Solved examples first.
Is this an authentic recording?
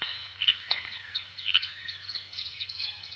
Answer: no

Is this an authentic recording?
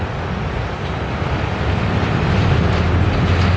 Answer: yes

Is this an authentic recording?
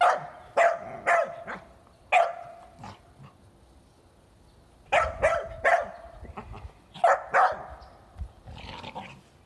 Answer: yes